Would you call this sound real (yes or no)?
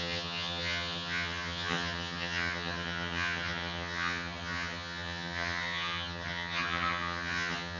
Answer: no